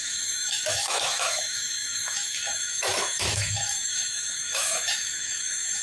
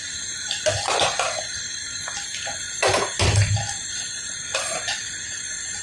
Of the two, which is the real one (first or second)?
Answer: second